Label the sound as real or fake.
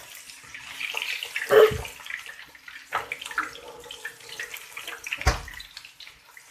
real